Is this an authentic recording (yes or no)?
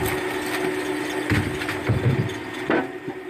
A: yes